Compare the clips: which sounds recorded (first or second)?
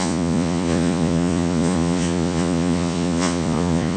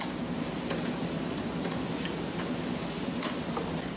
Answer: second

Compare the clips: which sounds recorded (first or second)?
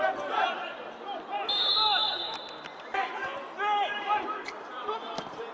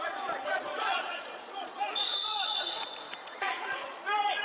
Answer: first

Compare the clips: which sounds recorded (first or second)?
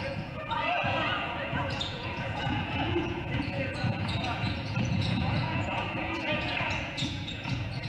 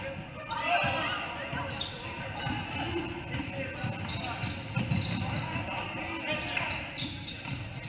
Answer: second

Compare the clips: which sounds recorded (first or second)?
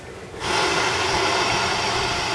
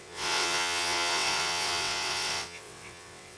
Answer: first